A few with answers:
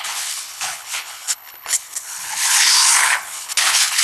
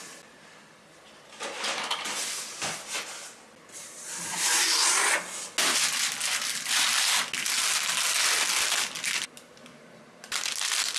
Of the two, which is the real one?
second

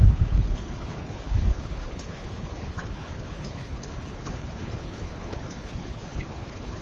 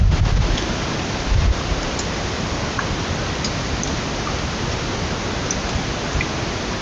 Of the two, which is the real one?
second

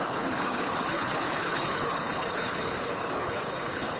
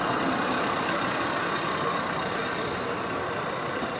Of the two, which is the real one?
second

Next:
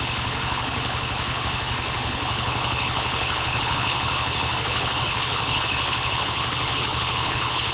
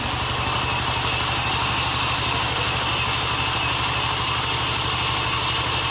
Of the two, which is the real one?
second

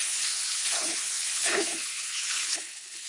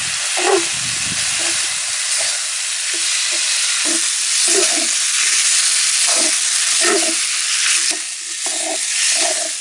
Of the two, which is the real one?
second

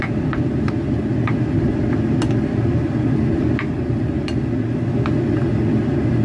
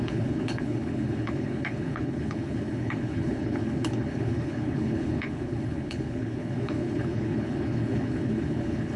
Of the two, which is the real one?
first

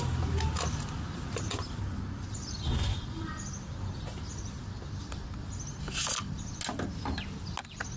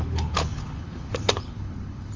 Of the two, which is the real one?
first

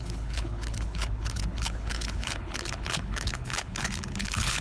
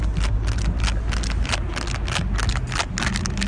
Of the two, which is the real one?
second